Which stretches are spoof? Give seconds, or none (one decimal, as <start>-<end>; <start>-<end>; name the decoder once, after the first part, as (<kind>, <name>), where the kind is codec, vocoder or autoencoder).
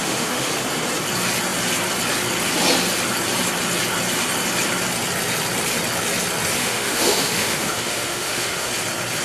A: 0.0-0.5 (autoencoder, DAC-VAE); 6.6-8.7